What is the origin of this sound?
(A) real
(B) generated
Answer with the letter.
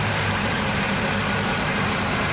B